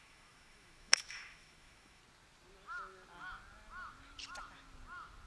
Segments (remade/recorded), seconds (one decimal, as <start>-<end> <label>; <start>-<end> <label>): 0.0-2.0 remade; 2.0-5.3 recorded